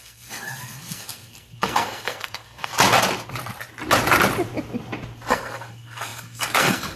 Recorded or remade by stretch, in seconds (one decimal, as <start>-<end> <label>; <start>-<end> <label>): 0.0-2.7 remade; 2.7-5.3 recorded; 5.3-7.0 remade